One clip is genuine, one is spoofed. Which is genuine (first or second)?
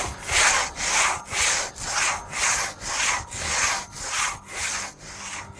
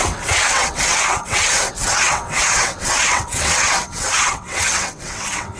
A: first